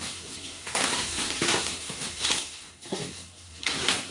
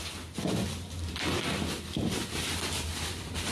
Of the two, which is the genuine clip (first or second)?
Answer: second